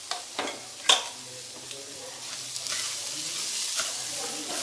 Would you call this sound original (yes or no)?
yes